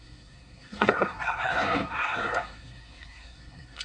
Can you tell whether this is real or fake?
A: fake